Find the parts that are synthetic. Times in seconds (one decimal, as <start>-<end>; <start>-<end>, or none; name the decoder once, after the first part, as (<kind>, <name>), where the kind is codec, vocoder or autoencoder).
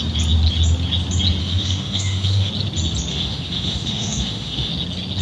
1.4-2.5 (autoencoder, DAC-VAE); 3.1-4.7